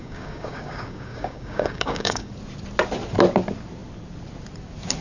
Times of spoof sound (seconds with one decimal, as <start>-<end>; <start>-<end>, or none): 0.0-2.3